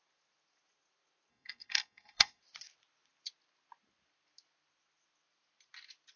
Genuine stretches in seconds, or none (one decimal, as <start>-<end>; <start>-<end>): 0.0-1.3; 2.4-6.2